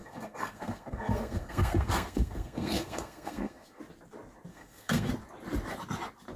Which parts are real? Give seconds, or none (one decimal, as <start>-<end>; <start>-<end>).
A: 3.8-4.5; 5.1-6.4